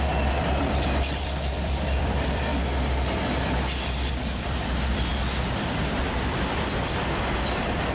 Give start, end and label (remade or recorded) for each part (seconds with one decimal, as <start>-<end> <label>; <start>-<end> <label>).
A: 0.0-2.5 remade; 2.5-4.1 recorded; 4.1-5.1 remade; 5.1-6.0 recorded; 6.0-7.9 remade

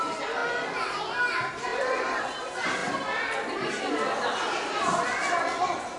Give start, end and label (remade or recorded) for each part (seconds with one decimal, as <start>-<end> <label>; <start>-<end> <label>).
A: 0.0-6.0 recorded

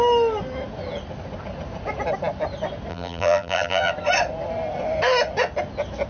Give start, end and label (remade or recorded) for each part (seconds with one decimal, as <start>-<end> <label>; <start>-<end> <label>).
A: 0.0-2.9 recorded; 2.9-3.9 remade; 3.9-6.1 recorded

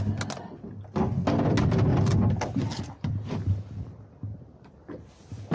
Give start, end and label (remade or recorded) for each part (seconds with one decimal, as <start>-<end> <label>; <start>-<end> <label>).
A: 0.0-1.9 recorded; 1.9-5.5 remade

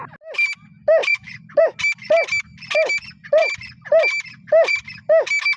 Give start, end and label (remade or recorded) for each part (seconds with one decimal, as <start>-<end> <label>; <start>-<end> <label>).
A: 0.0-1.0 recorded; 1.0-1.6 remade; 1.6-2.5 recorded; 2.5-5.1 remade; 5.1-5.6 recorded

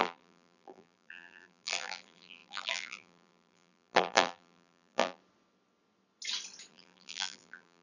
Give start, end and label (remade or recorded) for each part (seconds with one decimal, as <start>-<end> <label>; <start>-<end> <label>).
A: 0.0-5.2 remade; 5.2-6.7 recorded; 6.7-7.8 remade

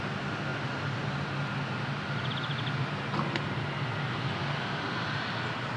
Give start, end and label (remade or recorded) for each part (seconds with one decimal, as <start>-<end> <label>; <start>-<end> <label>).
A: 0.0-5.8 recorded

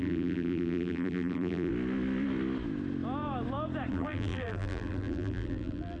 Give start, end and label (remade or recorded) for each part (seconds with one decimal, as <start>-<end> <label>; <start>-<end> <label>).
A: 0.0-1.7 remade; 1.7-3.9 recorded; 3.9-6.0 remade